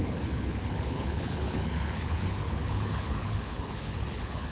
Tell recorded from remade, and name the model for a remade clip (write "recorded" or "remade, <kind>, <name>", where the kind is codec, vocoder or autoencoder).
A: remade, codec, HILCodec